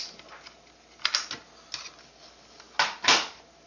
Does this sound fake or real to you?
real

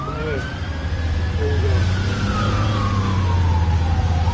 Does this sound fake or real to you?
real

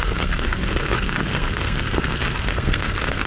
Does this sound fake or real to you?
fake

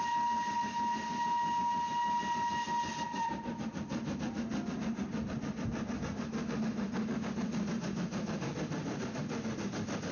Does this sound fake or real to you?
real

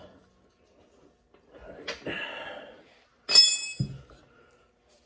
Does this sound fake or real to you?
real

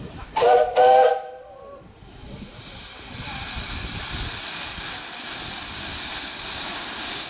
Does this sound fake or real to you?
fake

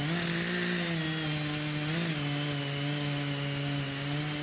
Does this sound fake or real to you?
real